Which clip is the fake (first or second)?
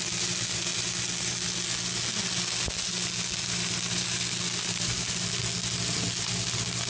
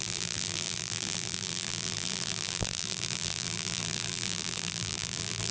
second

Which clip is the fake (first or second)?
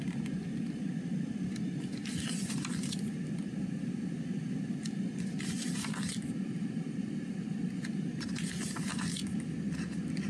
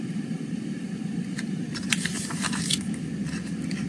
second